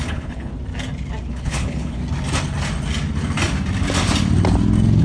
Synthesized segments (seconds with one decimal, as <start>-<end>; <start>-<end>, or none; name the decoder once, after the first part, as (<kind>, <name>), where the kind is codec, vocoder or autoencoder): 0.0-0.5 (codec, HILCodec); 1.3-2.0